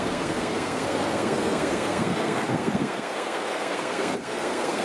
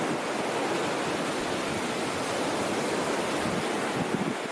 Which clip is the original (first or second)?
second